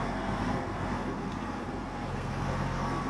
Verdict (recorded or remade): remade